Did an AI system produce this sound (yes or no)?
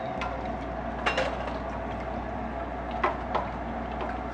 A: no